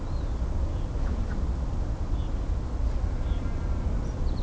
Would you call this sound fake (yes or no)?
no